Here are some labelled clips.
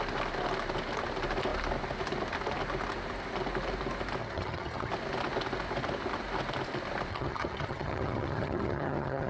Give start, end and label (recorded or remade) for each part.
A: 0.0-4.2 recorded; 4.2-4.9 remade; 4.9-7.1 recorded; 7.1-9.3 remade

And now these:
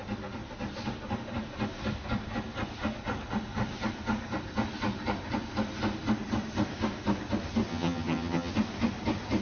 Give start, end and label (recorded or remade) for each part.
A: 0.0-7.7 recorded; 7.7-8.5 remade; 8.5-9.4 recorded

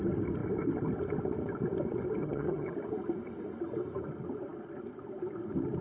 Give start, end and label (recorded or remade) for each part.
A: 0.0-2.2 recorded; 2.2-2.7 remade; 2.7-5.8 recorded